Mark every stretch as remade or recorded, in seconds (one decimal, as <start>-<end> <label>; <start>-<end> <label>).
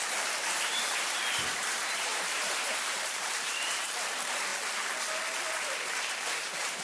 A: 0.0-4.5 remade; 4.5-5.5 recorded; 5.5-6.8 remade